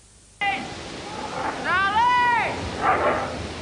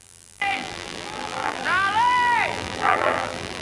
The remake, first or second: second